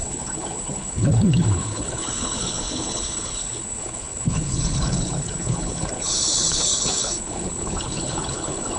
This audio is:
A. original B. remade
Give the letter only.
B